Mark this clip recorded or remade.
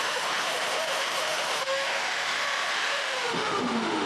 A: remade